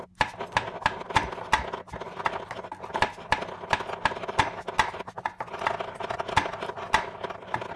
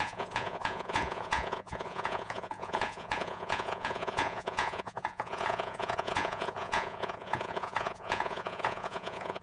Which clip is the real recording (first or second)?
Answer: first